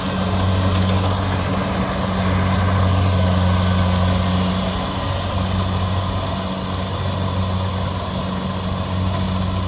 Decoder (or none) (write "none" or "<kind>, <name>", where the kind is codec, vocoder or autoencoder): none